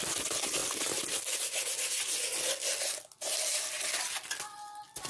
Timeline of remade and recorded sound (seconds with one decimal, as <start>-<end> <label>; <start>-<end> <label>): 0.0-5.1 recorded